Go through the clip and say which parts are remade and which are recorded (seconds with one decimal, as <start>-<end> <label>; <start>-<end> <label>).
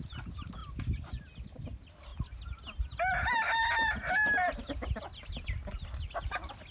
0.0-6.7 recorded